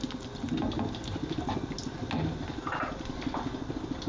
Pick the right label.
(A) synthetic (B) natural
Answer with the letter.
B